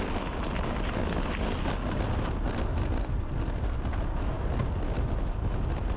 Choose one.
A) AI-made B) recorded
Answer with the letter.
B